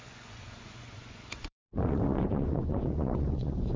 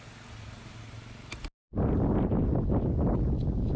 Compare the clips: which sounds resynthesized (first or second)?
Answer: first